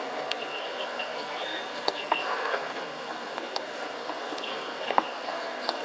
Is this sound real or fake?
fake